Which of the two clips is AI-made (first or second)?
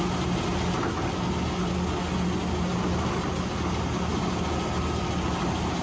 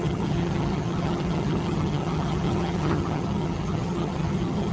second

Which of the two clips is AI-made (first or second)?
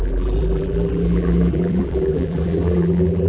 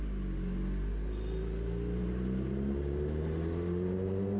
first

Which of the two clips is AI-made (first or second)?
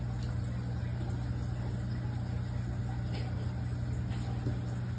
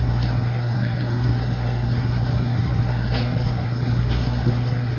second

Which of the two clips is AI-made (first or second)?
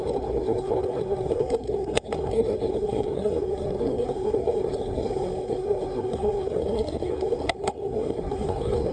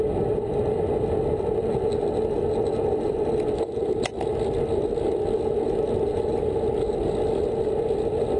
first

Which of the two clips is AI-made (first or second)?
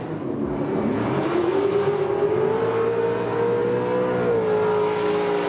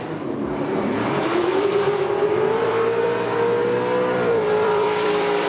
second